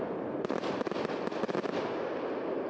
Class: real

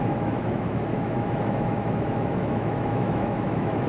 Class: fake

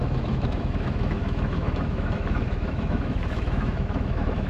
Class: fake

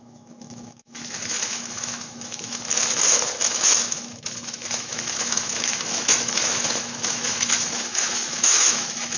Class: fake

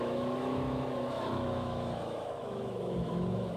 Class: fake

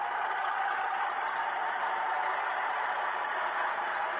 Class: real